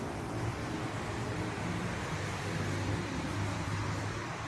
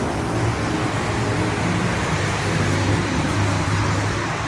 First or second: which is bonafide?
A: second